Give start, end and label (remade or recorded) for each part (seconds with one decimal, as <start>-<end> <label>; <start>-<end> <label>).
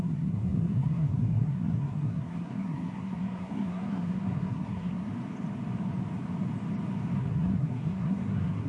0.0-5.1 remade; 5.1-7.2 recorded; 7.2-8.7 remade